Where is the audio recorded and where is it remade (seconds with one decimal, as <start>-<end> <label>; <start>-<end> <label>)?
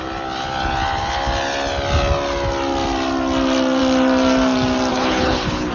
0.0-4.9 recorded; 4.9-5.7 remade